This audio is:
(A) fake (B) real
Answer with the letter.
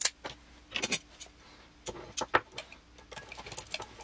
B